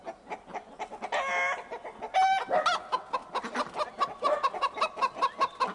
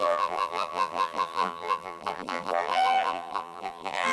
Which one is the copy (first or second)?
second